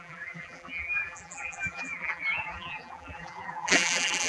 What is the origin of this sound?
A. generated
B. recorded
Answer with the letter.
A